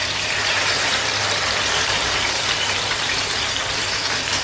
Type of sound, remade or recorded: remade